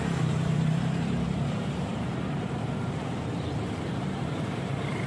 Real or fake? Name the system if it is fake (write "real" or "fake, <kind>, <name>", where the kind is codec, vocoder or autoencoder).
fake, vocoder, BigVGAN v2